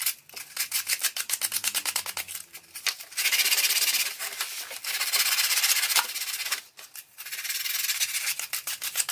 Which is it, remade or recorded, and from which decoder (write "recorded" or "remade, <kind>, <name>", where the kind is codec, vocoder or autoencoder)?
recorded